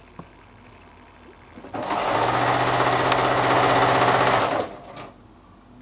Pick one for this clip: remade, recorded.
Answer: recorded